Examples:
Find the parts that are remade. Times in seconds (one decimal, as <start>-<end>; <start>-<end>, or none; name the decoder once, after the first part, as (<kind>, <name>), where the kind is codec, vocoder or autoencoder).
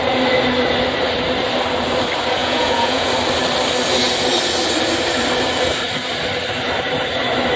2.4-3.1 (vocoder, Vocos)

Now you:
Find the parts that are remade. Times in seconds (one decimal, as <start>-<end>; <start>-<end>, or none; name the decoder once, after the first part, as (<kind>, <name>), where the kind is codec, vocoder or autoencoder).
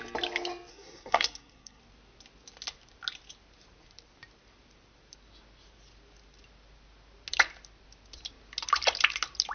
0.7-1.8 (codec, SNAC)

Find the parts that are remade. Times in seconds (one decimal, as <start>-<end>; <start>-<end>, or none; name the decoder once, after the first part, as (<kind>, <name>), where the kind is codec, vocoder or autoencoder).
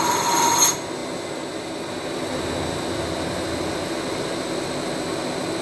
none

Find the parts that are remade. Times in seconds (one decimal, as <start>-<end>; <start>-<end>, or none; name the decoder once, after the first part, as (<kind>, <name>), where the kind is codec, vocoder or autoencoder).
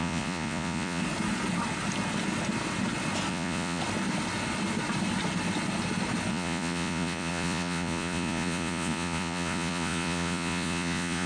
0.0-1.0 (vocoder, Vocos); 3.3-3.8; 6.3-11.3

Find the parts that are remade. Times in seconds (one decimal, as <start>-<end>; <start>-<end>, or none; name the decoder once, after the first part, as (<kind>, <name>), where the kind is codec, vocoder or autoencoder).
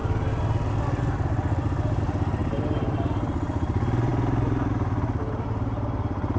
2.0-6.4 (vocoder, BigVGAN v2)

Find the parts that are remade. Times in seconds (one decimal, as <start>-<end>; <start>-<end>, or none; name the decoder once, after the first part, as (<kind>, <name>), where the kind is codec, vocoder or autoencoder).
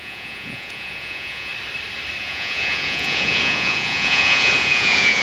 0.0-1.5 (vocoder, Vocos); 2.2-5.2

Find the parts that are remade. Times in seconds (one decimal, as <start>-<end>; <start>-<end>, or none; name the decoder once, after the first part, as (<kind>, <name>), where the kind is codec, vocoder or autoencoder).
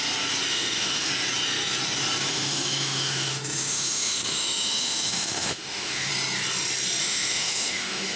0.5-1.1 (autoencoder, DAC-VAE); 2.3-6.1; 7.0-8.2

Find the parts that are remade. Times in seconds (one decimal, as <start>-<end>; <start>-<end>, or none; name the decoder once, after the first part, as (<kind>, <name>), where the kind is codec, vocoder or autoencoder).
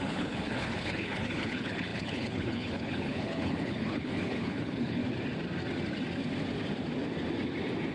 0.0-5.0 (codec, HILCodec)